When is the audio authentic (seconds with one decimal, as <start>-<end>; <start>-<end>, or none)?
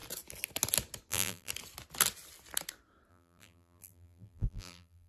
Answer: 0.0-1.1; 1.5-3.1